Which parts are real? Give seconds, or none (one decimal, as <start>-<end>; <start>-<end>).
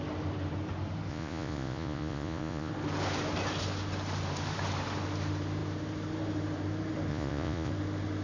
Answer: 0.0-1.1; 2.7-7.1; 7.7-8.2